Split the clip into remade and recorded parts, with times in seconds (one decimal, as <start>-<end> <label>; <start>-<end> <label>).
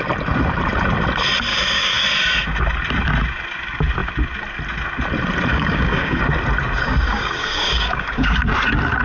0.0-1.5 recorded; 1.5-2.0 remade; 2.0-5.5 recorded; 5.5-6.2 remade; 6.2-7.1 recorded; 7.1-8.4 remade; 8.4-9.0 recorded